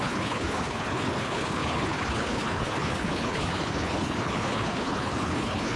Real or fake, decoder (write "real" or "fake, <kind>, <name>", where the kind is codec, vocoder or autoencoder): fake, codec, HILCodec